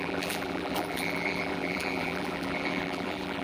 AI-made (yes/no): yes